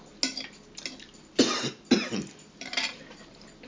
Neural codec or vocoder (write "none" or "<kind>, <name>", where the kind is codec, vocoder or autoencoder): none